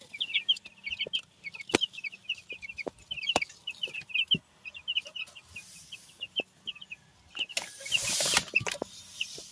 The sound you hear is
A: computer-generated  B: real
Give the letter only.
B